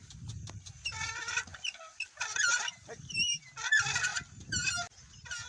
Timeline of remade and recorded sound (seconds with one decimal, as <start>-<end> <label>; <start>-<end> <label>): 0.0-5.5 recorded

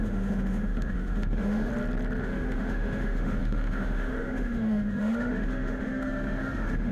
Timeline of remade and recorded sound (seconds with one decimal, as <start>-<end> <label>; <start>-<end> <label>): 0.0-1.7 remade; 1.7-2.2 recorded; 2.2-6.9 remade

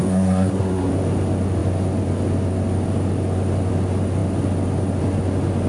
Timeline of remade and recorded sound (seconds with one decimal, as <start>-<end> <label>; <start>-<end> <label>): 0.0-0.9 remade; 0.9-5.7 recorded

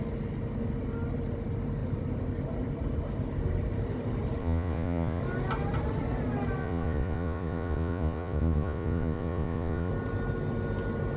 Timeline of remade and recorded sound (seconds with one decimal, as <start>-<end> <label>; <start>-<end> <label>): 0.0-4.4 recorded; 4.4-5.2 remade; 5.2-6.6 recorded; 6.6-9.9 remade; 9.9-11.2 recorded

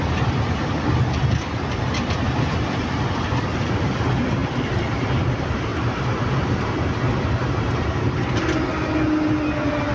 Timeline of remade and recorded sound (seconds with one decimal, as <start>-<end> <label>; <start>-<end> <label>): 0.0-5.7 recorded; 5.7-6.6 remade; 6.6-9.9 recorded

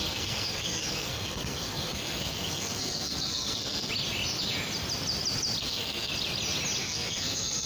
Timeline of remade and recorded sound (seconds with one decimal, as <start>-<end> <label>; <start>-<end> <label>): 0.0-3.9 remade; 3.9-5.6 recorded; 5.6-6.1 remade; 6.1-6.8 recorded; 6.8-7.7 remade

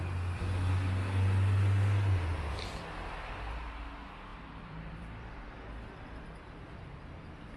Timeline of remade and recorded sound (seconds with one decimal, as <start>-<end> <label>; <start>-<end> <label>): 0.0-4.3 recorded; 4.3-5.7 remade; 5.7-7.6 recorded